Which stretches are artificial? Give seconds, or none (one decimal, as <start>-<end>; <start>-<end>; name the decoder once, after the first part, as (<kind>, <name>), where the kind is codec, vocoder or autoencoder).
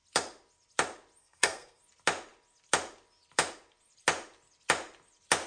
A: 1.2-1.8 (codec, SNAC)